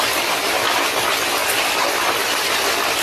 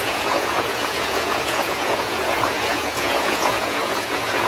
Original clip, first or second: first